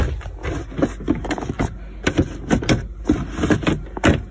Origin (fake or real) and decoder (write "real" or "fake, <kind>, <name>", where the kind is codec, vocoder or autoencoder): real